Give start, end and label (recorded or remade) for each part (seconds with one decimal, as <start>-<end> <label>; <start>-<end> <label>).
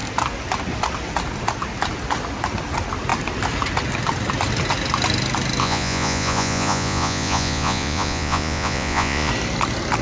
0.0-5.6 recorded; 5.6-9.3 remade; 9.3-10.0 recorded